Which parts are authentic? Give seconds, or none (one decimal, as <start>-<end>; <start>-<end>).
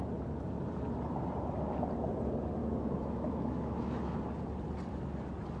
0.0-2.6; 4.2-5.6